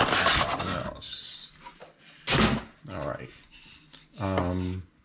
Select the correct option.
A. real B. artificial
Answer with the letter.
A